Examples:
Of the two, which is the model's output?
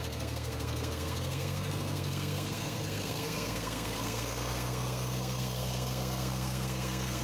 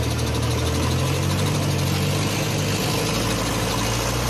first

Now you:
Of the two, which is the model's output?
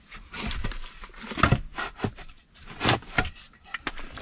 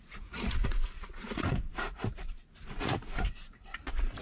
second